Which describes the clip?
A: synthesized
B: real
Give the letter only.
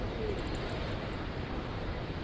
B